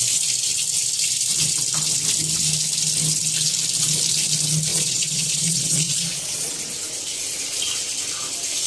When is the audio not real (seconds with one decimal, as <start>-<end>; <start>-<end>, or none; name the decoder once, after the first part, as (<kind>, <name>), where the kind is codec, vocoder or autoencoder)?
4.7-6.5 (vocoder, Vocos)